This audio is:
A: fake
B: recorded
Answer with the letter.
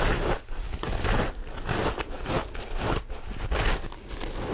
B